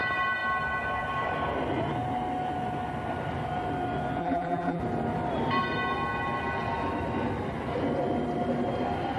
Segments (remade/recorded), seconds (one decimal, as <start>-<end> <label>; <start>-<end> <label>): 0.0-4.2 recorded; 4.2-4.8 remade; 4.8-9.2 recorded